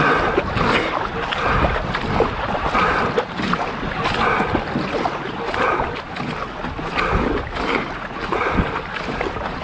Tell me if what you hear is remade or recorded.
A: recorded